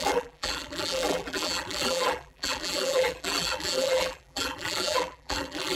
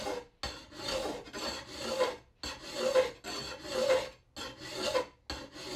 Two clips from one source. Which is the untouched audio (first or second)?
second